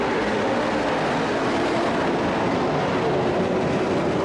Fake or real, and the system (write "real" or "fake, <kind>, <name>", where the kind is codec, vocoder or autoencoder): fake, vocoder, BigVGAN v2